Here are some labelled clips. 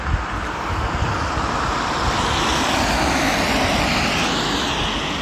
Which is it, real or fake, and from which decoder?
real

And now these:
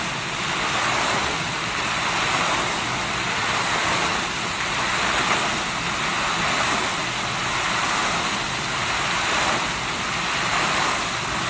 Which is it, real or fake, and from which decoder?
real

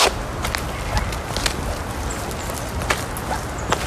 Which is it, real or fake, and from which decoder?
real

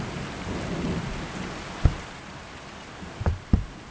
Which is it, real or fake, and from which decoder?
real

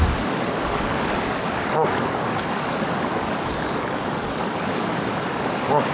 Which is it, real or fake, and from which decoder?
fake, codec, DAC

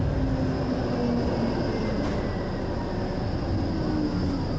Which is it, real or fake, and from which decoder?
real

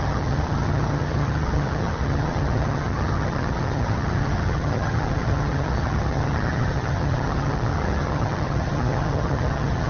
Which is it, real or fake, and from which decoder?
fake, vocoder, HiFi-GAN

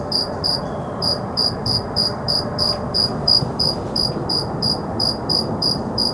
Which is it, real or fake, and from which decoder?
fake, vocoder, BigVGAN v2